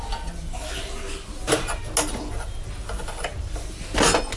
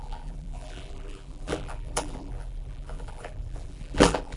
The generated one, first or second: second